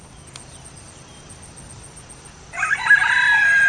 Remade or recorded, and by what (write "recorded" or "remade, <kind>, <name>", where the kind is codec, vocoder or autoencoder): recorded